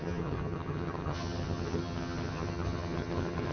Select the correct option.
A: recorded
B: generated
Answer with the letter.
B